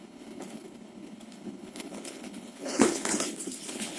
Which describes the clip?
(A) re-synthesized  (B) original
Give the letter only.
A